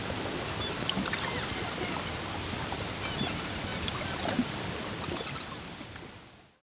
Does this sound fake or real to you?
real